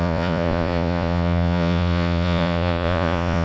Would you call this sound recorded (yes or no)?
no